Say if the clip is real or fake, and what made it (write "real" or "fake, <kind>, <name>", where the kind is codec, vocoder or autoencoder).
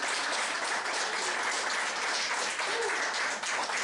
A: real